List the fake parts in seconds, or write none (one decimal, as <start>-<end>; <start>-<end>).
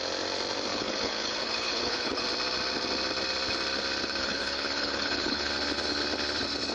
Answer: 0.7-2.2; 4.2-5.5